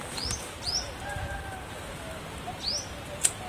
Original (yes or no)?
yes